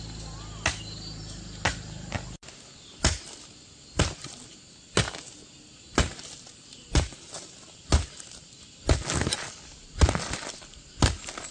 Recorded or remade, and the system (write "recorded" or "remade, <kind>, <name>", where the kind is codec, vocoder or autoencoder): recorded